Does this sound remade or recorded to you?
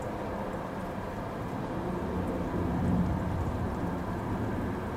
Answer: recorded